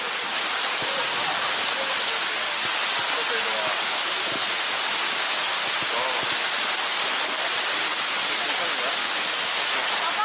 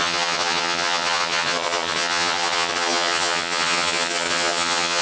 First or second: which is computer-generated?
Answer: second